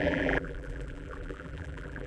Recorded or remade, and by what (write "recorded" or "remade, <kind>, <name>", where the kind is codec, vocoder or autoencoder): remade, vocoder, BigVGAN v2